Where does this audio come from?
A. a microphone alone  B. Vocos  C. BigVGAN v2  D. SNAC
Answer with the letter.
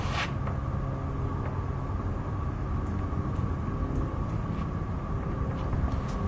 A